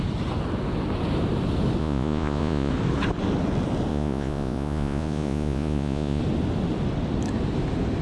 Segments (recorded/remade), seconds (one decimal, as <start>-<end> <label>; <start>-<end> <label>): 0.0-1.8 recorded; 1.8-2.7 remade; 2.7-3.9 recorded; 3.9-6.2 remade; 6.2-8.0 recorded